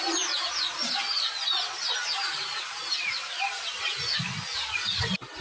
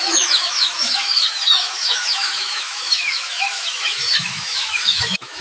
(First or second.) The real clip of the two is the first